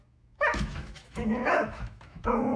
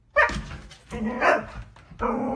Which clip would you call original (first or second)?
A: second